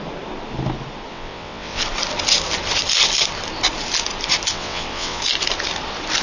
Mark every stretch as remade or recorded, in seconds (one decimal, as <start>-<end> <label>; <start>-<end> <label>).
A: 0.0-1.1 recorded; 1.1-1.8 remade; 1.8-4.5 recorded; 4.5-5.2 remade; 5.2-6.2 recorded